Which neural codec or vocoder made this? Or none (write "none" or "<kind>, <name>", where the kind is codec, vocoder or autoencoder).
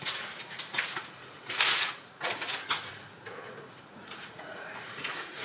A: vocoder, Vocos